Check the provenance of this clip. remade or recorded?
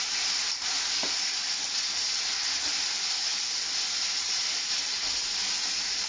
recorded